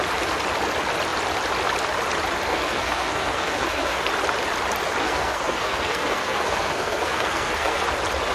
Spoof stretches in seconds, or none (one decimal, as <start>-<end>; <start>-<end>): 2.5-4.0; 5.0-7.9